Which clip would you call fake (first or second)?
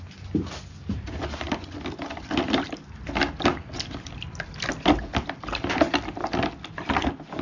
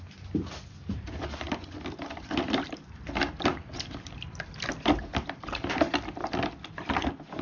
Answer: second